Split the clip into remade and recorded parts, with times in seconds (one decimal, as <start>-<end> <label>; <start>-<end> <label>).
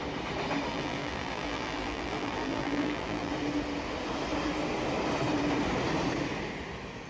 0.0-0.7 recorded; 0.7-3.3 remade; 3.3-7.1 recorded